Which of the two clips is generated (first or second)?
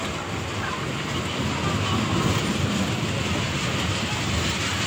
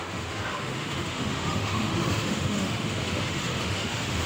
second